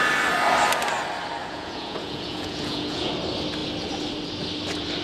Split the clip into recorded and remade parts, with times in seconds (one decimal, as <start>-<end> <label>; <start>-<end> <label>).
0.0-1.4 recorded; 1.4-3.1 remade; 3.1-5.0 recorded